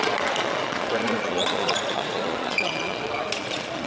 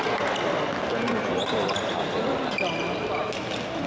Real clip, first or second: second